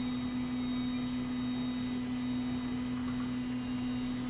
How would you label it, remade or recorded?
recorded